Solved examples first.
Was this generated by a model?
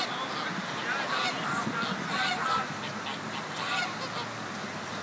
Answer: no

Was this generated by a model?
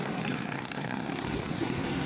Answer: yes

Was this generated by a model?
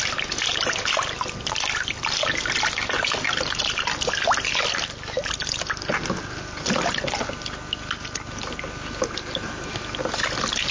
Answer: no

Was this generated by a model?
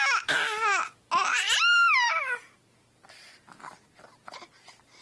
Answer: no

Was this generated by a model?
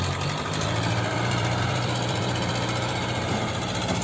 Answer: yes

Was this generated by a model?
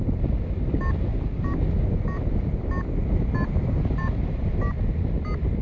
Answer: no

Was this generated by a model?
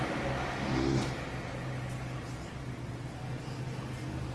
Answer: no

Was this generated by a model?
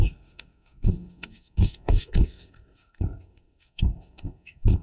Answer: yes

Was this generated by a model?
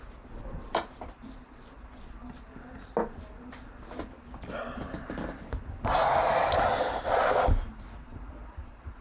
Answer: no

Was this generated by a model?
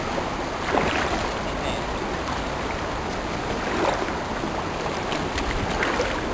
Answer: no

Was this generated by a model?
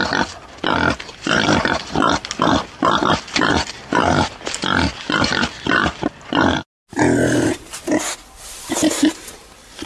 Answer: no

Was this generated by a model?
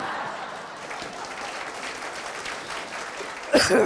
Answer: no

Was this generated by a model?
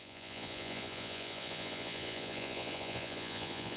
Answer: yes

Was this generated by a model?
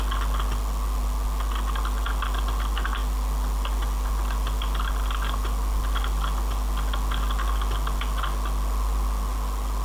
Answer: no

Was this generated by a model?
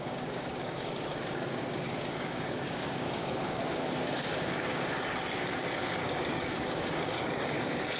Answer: yes